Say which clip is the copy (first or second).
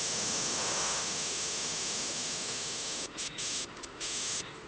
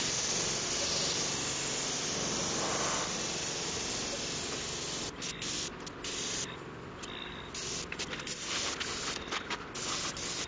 first